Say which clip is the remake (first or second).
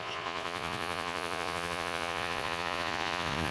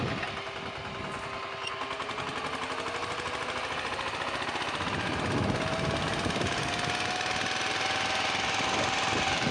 first